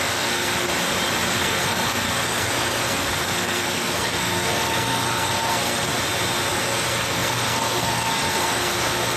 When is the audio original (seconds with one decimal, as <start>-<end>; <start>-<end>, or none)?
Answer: 0.7-1.3; 5.9-6.6